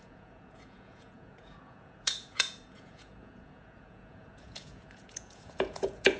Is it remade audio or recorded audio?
remade